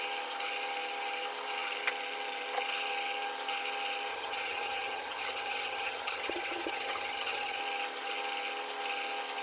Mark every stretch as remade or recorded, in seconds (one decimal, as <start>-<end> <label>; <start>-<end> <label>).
0.0-4.1 recorded; 4.1-7.6 remade; 7.6-9.4 recorded